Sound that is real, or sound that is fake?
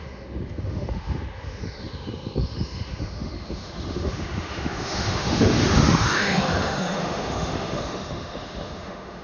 fake